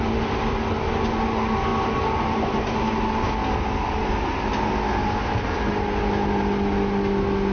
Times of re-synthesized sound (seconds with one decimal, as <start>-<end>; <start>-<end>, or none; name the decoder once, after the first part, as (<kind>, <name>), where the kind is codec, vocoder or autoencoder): none